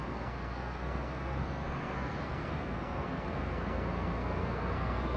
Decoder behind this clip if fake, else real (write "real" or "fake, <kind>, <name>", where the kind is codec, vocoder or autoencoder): fake, codec, SNAC